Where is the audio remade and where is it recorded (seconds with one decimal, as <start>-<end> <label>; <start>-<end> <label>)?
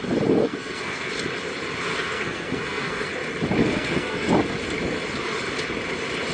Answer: 0.0-0.4 recorded; 0.4-1.1 remade; 1.1-1.9 recorded; 1.9-3.1 remade; 3.1-3.6 recorded; 3.6-4.3 remade; 4.3-6.3 recorded